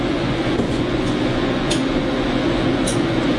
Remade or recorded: remade